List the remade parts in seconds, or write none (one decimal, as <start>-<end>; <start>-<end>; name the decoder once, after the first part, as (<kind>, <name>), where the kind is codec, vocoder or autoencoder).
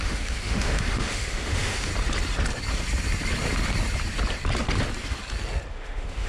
0.0-1.9 (autoencoder, DAC-VAE); 5.7-6.3